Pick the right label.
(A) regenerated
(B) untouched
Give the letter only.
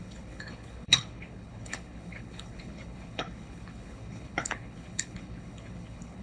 A